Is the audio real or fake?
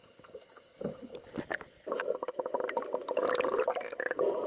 real